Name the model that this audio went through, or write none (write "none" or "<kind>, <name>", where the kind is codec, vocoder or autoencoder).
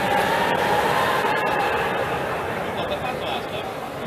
none